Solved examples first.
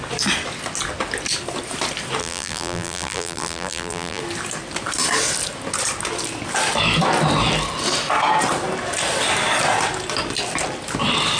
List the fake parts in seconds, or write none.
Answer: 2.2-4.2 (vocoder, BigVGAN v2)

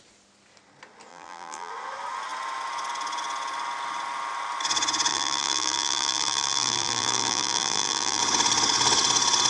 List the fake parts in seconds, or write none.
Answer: 1.1-1.7 (vocoder, BigVGAN v2); 5.1-8.2

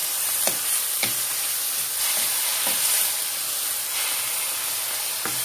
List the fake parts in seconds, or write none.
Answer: 0.0-0.5 (vocoder, BigVGAN v2)

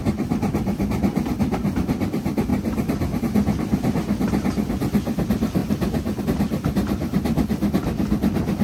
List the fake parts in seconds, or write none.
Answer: none

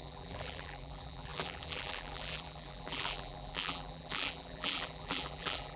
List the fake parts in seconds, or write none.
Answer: 0.0-5.8 (vocoder, BigVGAN v2)

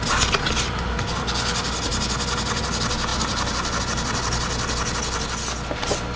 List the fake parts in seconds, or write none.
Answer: 3.1-3.8 (vocoder, BigVGAN v2)

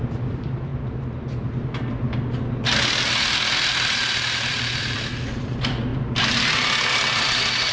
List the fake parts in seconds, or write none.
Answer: 0.0-0.7 (vocoder, BigVGAN v2); 4.5-5.9; 7.2-7.7